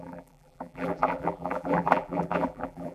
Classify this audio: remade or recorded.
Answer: remade